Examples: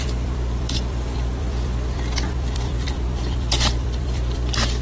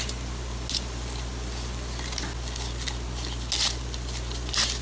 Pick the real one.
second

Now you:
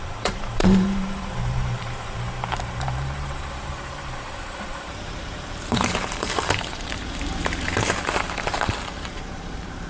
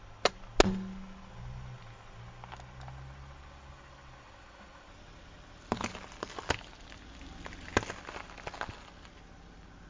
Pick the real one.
second